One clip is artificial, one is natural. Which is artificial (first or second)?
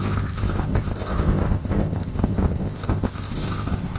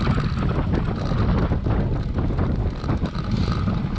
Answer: first